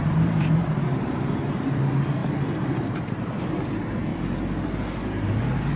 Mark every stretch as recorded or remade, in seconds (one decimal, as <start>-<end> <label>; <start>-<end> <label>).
0.0-4.1 remade; 4.1-5.8 recorded